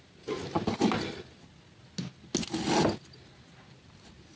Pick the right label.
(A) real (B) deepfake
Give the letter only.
A